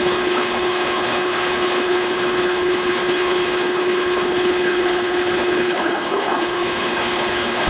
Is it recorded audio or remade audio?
remade